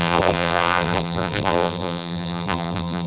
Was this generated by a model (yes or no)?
yes